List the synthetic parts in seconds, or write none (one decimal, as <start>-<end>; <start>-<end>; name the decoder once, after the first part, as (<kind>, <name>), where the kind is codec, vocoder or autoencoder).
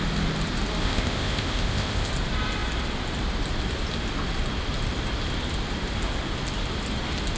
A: 0.8-2.1 (codec, ZipCodec)